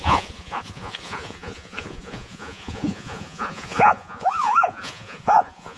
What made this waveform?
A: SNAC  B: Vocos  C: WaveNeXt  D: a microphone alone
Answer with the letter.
B